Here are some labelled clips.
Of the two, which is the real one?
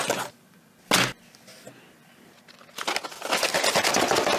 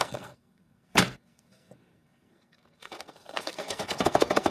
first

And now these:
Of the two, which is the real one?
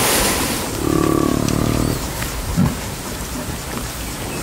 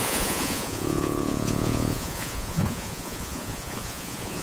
first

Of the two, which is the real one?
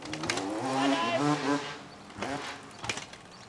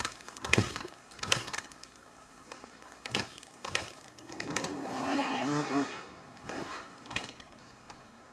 first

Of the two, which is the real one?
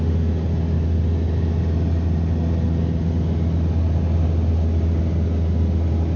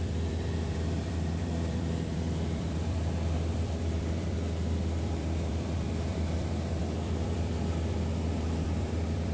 first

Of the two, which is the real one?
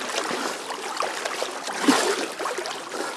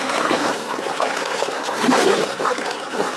first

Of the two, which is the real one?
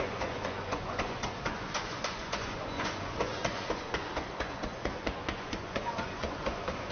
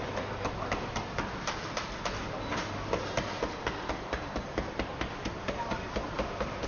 second